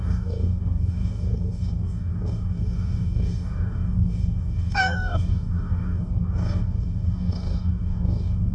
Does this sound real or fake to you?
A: fake